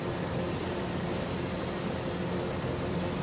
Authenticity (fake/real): real